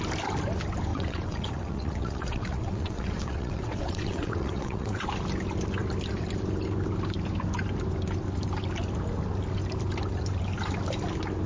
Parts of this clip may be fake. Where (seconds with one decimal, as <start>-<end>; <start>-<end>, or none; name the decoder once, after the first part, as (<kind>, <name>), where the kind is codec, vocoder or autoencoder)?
0.9-5.0 (vocoder, WaveNeXt)